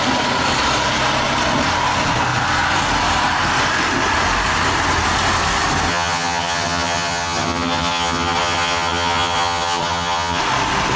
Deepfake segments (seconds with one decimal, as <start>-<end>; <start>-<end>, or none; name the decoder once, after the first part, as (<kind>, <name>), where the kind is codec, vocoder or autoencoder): 5.9-10.4 (vocoder, HiFi-GAN)